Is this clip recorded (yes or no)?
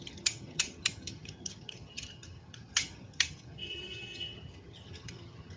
no